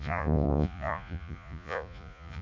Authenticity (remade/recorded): remade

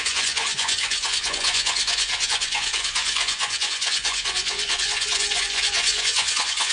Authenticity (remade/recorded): remade